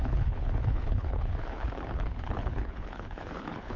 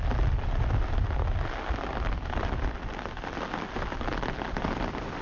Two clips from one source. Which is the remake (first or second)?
first